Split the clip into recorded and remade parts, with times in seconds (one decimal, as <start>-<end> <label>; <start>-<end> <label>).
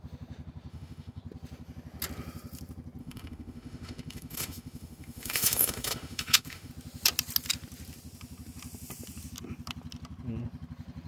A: 0.0-0.7 recorded; 0.7-1.2 remade; 1.2-3.0 recorded; 3.0-6.7 remade; 6.7-11.1 recorded